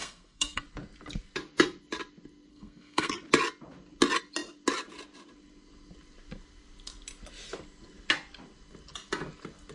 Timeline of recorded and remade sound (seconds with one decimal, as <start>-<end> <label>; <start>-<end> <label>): 0.0-0.6 remade; 0.6-2.5 recorded; 2.5-3.1 remade; 3.1-9.7 recorded